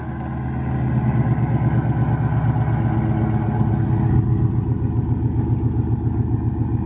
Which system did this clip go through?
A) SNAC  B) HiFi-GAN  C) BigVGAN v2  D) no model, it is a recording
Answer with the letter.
D